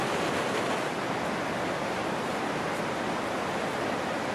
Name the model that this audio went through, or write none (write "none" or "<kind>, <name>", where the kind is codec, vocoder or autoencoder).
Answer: none